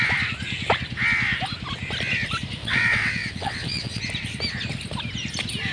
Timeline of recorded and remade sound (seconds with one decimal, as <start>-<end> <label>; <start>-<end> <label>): 0.0-2.6 recorded; 2.6-4.0 remade; 4.0-5.7 recorded